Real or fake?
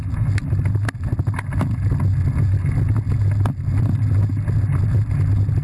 real